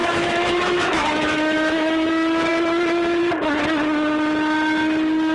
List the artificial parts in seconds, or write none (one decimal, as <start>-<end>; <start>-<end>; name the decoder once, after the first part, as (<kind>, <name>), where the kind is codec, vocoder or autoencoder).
0.0-2.1 (autoencoder, DAC-VAE)